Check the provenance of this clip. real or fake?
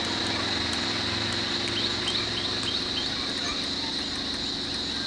real